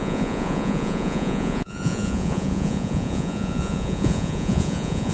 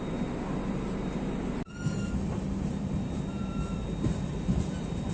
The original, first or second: second